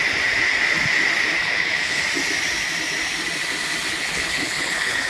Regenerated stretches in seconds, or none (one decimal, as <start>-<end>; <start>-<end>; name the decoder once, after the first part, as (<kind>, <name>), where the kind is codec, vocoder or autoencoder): 1.4-2.0 (codec, HILCodec); 3.9-5.1